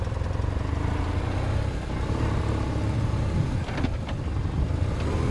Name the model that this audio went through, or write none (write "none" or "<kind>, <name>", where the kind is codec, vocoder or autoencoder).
none